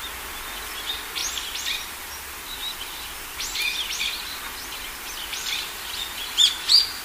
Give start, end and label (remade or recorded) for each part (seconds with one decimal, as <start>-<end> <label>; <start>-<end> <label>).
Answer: 0.0-5.3 recorded; 5.3-7.0 remade